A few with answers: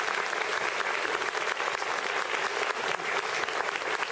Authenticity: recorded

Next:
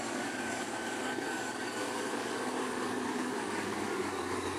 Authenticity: remade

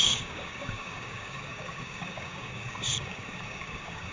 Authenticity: remade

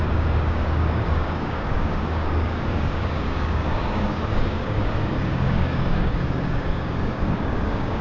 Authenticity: remade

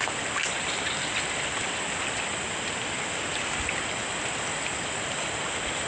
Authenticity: recorded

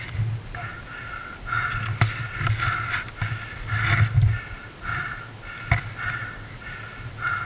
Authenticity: recorded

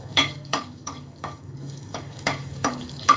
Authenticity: remade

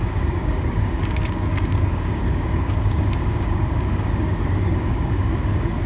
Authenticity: remade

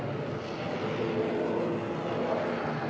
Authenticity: recorded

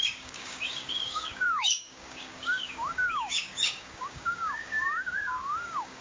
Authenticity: remade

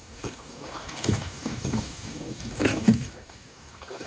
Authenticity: remade